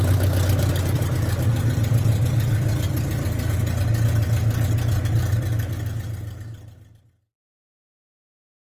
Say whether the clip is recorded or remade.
recorded